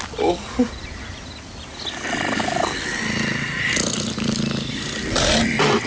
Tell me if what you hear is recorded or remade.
recorded